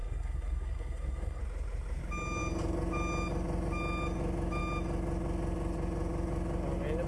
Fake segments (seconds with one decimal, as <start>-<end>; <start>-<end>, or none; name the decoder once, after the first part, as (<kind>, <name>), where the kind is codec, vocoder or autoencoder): 0.0-1.4 (codec, SNAC)